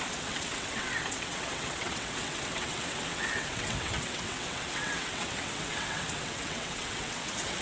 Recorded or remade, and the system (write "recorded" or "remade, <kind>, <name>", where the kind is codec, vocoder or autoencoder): remade, vocoder, WaveNeXt